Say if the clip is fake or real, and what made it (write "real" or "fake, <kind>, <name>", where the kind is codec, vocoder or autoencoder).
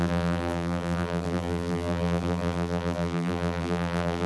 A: fake, vocoder, BigVGAN v2